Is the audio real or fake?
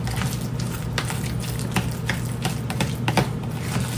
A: real